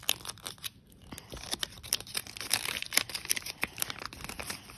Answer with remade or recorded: remade